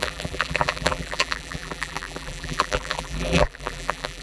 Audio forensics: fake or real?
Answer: fake